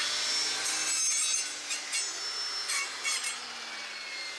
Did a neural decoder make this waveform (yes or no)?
no